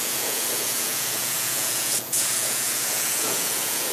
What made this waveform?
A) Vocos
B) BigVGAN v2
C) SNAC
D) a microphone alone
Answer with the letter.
A